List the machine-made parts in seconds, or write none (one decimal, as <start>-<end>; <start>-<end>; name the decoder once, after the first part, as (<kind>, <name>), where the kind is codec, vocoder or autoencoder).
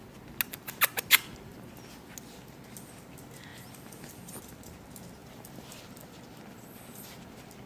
3.5-4.4 (vocoder, BigVGAN v2); 5.2-5.8